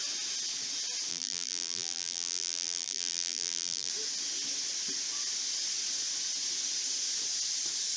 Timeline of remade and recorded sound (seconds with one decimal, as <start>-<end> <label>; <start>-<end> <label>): 0.0-1.1 recorded; 1.1-3.9 remade; 3.9-8.0 recorded